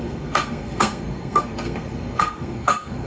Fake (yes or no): yes